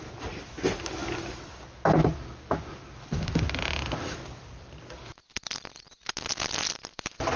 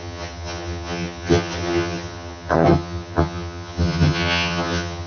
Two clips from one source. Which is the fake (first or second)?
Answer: second